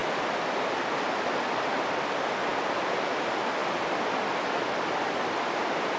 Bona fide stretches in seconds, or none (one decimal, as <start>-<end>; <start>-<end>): 0.0-6.0